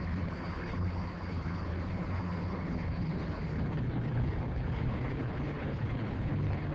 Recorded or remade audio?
remade